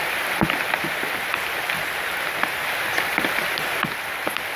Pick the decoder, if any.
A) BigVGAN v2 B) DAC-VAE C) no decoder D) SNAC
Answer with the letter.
A